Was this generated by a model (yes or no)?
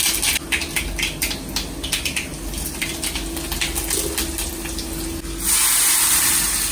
no